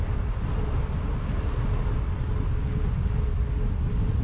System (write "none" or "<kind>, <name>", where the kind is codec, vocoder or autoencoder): none